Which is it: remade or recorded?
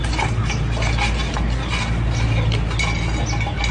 recorded